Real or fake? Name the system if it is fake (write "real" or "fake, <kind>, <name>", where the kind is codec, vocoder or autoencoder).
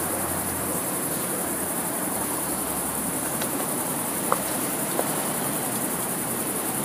fake, vocoder, BigVGAN v2